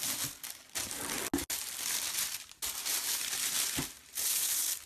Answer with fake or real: real